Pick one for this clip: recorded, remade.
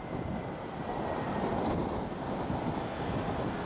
recorded